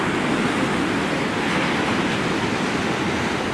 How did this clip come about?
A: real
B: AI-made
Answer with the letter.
A